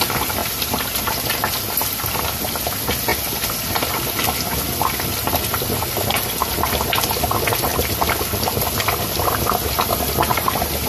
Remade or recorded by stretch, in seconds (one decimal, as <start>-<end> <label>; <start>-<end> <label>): 0.0-7.7 recorded; 7.7-8.6 remade; 8.6-10.9 recorded